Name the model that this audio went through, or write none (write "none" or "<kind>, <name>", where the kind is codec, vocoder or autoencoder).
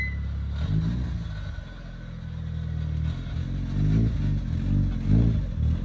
none